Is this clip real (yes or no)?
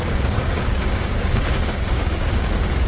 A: no